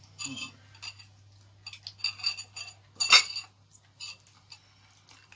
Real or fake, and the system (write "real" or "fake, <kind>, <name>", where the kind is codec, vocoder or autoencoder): real